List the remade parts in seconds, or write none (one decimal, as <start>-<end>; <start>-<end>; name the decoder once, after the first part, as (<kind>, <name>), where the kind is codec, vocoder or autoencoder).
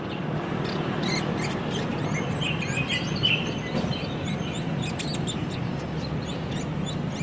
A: 5.1-5.8 (vocoder, BigVGAN v2)